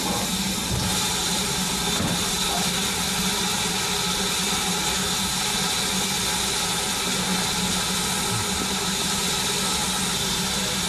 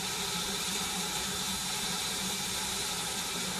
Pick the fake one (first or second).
second